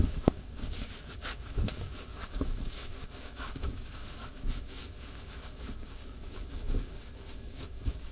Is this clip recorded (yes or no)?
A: no